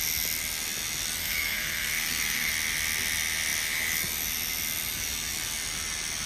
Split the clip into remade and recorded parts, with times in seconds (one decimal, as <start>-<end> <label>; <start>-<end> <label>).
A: 0.0-1.2 recorded; 1.2-2.5 remade; 2.5-6.3 recorded